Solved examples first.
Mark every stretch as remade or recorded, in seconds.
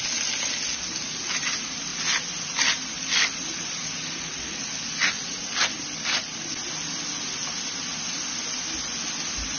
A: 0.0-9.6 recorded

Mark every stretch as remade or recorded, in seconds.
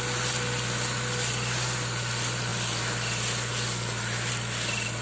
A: 0.0-5.0 recorded